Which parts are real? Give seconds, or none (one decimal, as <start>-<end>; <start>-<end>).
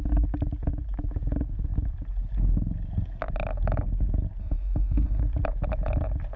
0.0-4.4; 5.2-6.4